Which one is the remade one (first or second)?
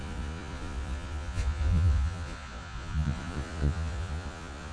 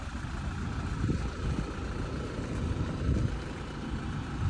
first